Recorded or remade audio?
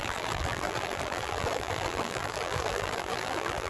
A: remade